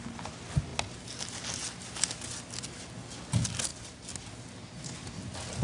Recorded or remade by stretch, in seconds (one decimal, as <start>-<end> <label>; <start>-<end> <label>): 0.0-5.6 recorded